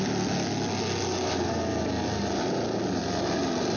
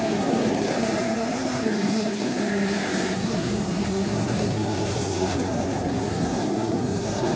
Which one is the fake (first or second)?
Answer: second